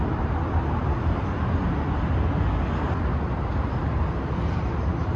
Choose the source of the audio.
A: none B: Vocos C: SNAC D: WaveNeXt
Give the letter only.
A